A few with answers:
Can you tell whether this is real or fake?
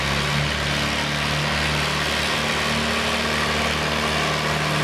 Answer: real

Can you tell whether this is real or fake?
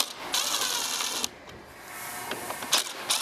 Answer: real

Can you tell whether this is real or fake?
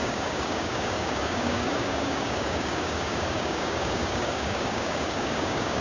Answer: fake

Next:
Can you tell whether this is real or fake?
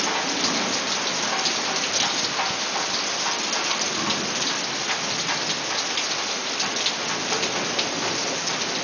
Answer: real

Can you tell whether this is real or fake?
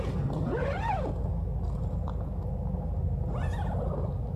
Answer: real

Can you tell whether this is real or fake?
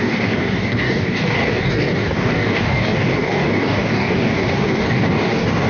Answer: fake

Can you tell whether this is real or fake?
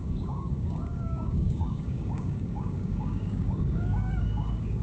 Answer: fake